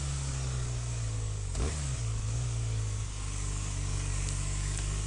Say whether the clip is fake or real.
fake